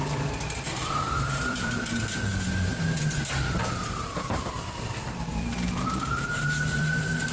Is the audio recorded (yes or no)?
no